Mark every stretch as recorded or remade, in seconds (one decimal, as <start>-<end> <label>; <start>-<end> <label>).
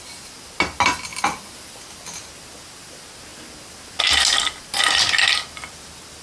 0.0-1.1 recorded; 1.1-1.8 remade; 1.8-6.2 recorded